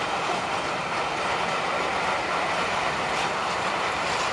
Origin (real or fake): fake